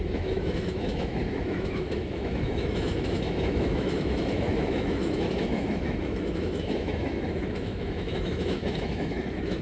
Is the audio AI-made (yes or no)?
yes